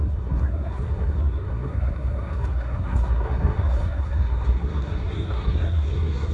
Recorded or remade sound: remade